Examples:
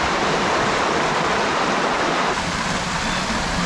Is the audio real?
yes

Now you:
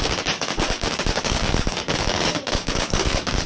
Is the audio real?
no